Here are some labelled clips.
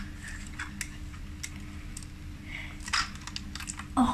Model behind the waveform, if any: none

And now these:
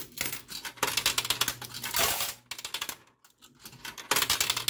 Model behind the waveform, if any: none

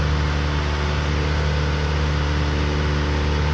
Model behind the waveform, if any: none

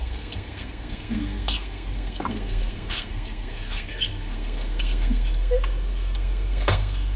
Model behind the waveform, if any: codec, SNAC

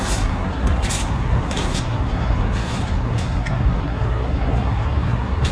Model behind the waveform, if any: codec, SNAC